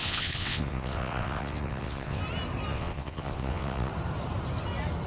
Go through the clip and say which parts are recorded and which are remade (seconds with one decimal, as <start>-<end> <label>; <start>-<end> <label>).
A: 0.0-2.2 remade; 2.2-2.7 recorded; 2.7-3.9 remade; 3.9-5.1 recorded